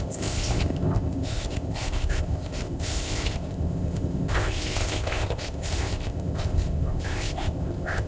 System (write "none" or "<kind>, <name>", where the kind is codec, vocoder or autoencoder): codec, ZipCodec